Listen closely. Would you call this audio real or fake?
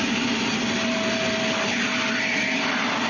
real